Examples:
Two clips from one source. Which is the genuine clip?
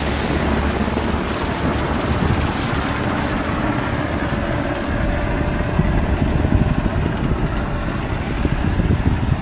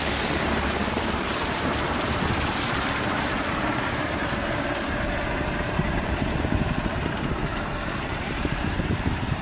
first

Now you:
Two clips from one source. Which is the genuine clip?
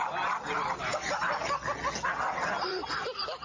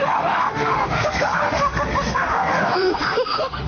first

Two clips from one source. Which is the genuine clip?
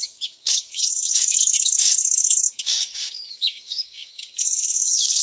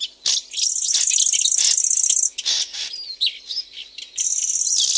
second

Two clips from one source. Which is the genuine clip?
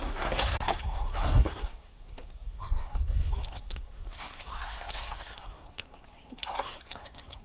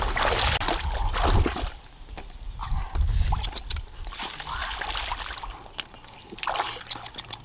second